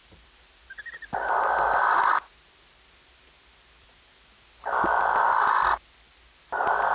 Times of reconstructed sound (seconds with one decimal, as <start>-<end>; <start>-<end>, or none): none